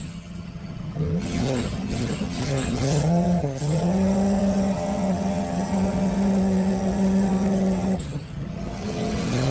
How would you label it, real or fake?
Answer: fake